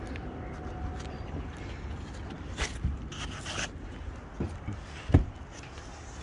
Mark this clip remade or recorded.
recorded